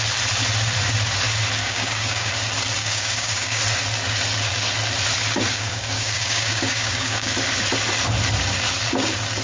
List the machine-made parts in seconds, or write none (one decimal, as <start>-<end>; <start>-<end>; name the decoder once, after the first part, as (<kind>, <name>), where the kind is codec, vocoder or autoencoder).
1.6-2.3 (codec, DAC); 2.8-3.6; 5.5-7.3